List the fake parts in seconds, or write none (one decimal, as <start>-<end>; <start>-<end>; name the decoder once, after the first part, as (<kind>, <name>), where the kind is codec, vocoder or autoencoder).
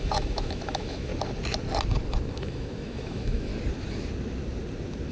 0.0-1.1 (autoencoder, DAC-VAE); 2.3-3.5